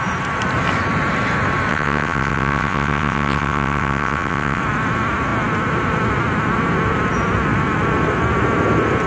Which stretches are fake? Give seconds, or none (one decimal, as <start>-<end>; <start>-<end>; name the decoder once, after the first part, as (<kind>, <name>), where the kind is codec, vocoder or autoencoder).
1.7-4.6 (vocoder, WaveNeXt)